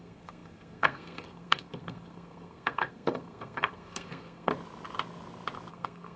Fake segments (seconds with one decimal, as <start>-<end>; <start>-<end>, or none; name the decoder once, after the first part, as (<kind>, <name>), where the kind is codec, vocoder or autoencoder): 0.0-4.5 (codec, SNAC); 5.7-6.2